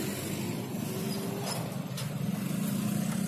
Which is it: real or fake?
real